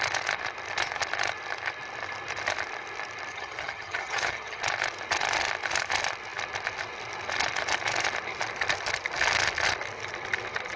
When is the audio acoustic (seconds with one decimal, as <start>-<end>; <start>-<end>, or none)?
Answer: 0.0-3.3; 4.6-10.8